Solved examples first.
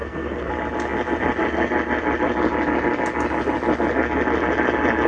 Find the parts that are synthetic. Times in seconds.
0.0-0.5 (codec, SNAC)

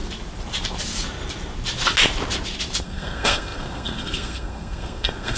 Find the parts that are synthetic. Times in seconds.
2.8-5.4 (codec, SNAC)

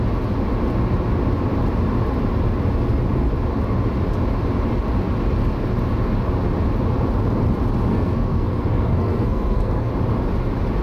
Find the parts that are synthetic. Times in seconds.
7.9-9.9 (codec, SNAC)

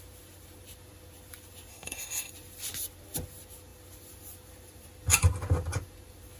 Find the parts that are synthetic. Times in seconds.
1.7-2.3 (codec, SNAC)